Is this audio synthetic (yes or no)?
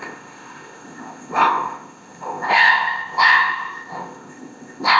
yes